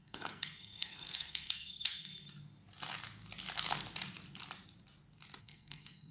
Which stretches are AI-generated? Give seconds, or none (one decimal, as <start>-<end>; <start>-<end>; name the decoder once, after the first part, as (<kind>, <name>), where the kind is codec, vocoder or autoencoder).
0.0-2.1 (codec, SNAC); 5.4-6.1